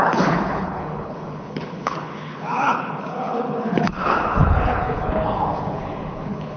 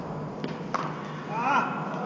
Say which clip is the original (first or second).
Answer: second